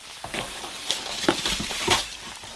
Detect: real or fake fake